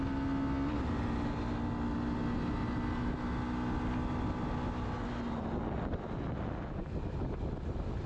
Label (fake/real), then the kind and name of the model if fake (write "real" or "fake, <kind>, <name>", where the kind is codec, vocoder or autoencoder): real